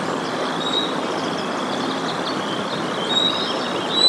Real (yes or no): yes